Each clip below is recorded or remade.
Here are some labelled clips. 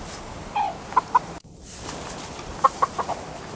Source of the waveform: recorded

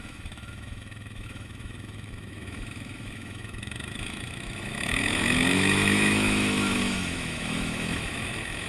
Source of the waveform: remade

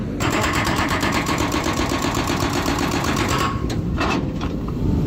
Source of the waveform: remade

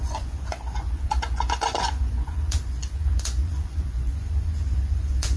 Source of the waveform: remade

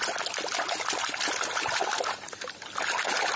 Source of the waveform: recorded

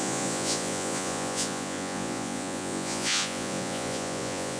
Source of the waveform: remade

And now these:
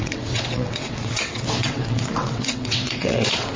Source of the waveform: remade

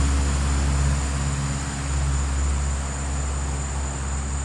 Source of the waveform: recorded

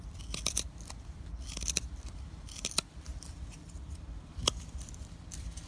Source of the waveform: remade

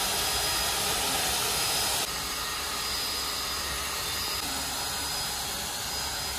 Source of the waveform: recorded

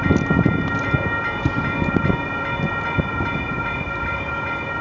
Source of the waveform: recorded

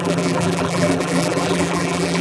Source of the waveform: remade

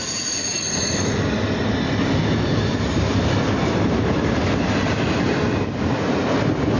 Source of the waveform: remade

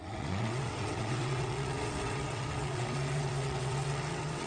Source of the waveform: remade